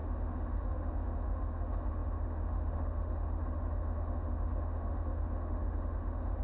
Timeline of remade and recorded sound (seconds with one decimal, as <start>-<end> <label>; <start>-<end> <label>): 0.0-6.4 remade